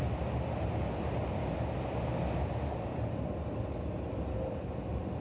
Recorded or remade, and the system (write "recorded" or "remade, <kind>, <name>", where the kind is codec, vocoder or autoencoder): recorded